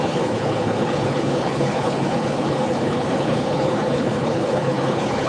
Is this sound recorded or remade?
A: remade